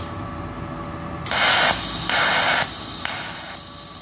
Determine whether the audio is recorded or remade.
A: recorded